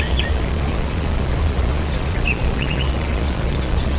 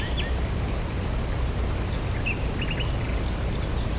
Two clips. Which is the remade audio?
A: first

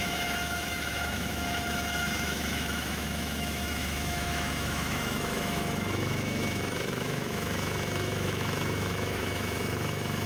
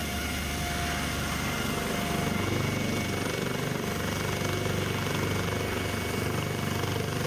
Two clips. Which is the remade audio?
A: first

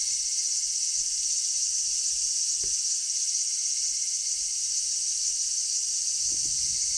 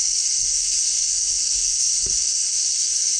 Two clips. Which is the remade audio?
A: second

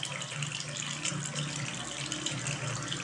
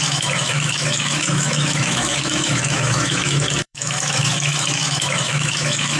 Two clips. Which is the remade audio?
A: second